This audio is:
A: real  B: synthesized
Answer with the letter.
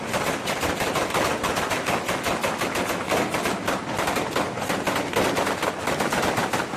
A